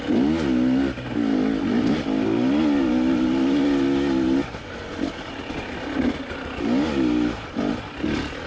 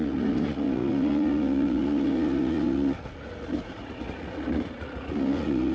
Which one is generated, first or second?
second